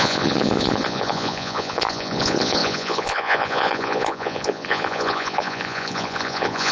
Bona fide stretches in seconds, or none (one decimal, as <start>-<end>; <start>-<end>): none